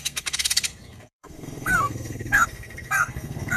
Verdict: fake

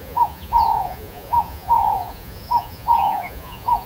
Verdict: fake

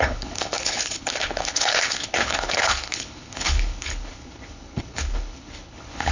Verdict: fake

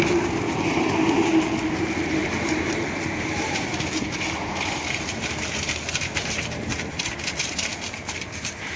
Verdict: fake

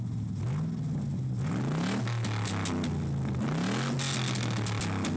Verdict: real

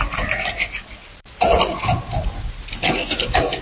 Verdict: real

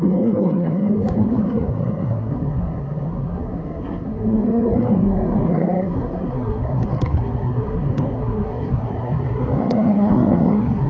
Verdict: fake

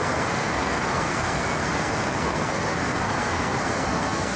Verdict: fake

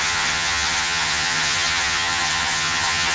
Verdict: fake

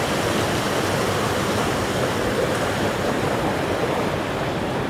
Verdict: real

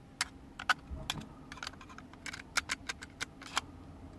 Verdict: real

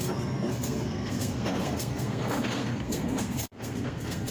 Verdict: fake